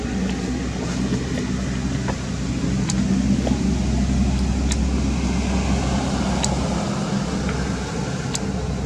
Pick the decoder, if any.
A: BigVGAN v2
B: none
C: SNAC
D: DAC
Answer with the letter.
B